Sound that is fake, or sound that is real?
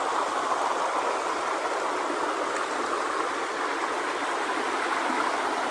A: real